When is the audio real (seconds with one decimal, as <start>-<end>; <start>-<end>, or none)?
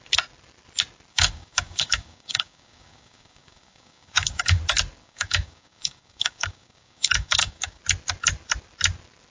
0.0-1.1; 4.6-5.0; 7.8-9.3